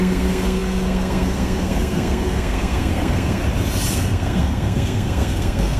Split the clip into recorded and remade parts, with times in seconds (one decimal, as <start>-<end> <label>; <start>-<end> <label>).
0.0-3.4 remade; 3.4-3.9 recorded; 3.9-5.8 remade